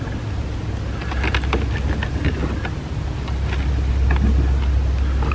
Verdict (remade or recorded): recorded